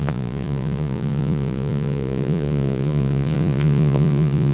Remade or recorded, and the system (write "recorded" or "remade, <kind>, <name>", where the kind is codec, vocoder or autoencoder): remade, vocoder, Vocos